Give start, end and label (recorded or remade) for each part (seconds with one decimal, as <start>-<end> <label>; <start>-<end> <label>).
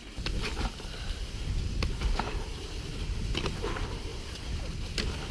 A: 0.0-5.3 recorded